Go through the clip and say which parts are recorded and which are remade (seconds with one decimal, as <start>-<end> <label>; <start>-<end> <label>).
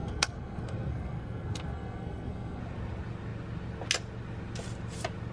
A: 0.0-2.6 remade; 2.6-5.3 recorded